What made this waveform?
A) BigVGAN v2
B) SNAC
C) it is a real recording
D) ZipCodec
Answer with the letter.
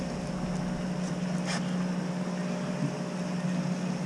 C